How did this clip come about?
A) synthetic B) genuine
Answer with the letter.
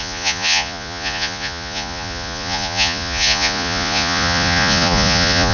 A